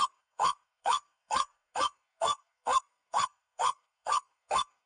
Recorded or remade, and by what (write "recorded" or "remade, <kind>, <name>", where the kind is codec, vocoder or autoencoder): remade, codec, SNAC